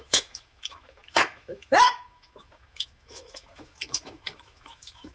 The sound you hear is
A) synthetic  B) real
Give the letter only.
A